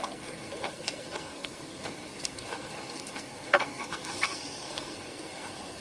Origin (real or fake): fake